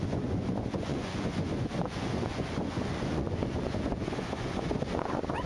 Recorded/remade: remade